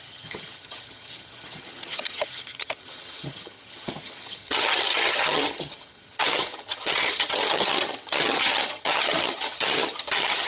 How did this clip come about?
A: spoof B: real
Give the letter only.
A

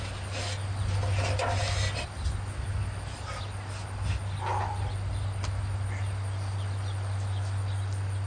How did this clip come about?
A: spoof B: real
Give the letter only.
B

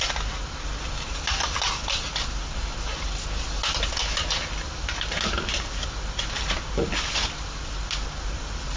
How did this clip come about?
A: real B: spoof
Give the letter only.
A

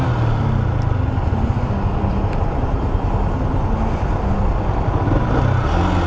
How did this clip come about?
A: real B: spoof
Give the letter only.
A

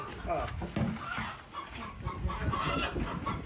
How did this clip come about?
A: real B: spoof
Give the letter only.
A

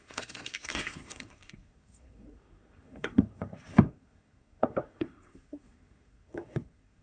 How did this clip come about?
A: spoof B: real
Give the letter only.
A